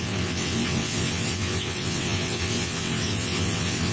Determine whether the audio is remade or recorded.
remade